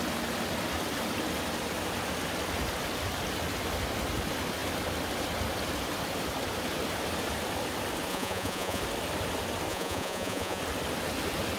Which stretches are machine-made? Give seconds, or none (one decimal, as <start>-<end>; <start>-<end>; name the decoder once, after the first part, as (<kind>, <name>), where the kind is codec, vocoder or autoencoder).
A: 8.1-8.8 (vocoder, Vocos); 9.7-10.6